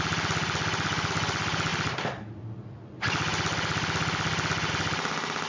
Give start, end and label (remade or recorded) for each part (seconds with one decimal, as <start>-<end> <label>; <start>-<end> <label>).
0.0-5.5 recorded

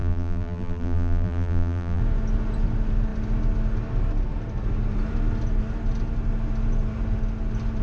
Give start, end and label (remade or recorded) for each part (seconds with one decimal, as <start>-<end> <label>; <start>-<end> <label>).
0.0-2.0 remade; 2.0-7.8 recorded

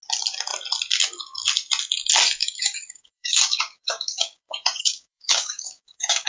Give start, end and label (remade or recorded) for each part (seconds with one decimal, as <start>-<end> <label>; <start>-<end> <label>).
0.0-2.4 recorded; 2.4-6.3 remade